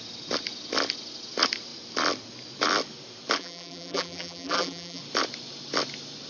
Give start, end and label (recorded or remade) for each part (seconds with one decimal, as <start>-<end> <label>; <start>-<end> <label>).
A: 0.0-3.4 recorded; 3.4-5.0 remade; 5.0-6.3 recorded